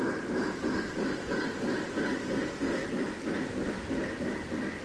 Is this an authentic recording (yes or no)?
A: yes